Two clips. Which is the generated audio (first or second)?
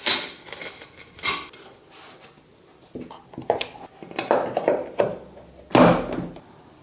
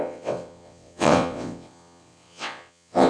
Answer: second